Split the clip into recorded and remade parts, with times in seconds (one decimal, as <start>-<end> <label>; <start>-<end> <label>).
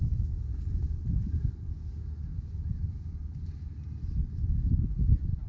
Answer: 0.0-0.5 recorded; 0.5-1.1 remade; 1.1-2.3 recorded; 2.3-3.6 remade; 3.6-5.5 recorded